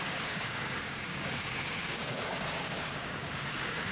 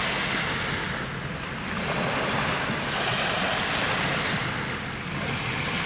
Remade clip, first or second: first